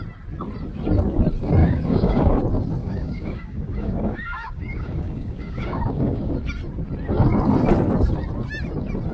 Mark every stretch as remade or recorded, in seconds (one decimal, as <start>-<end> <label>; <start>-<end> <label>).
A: 0.0-1.6 recorded; 1.6-2.4 remade; 2.4-2.8 recorded; 2.8-6.3 remade; 6.3-9.1 recorded